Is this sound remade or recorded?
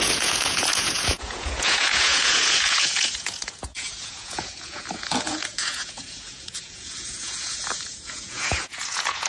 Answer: remade